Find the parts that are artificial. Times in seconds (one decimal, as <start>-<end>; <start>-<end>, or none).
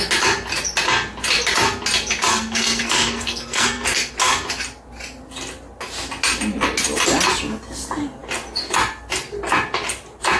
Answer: 2.3-4.1